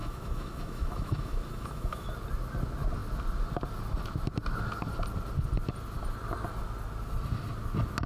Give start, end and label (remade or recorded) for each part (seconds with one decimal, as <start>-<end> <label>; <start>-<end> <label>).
0.0-2.1 remade; 2.1-8.1 recorded